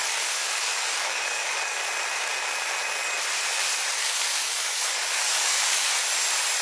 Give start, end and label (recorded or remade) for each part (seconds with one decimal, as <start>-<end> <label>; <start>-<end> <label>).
0.0-1.8 remade; 1.8-4.0 recorded; 4.0-5.9 remade; 5.9-6.6 recorded